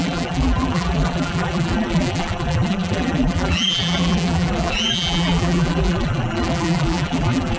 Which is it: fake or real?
fake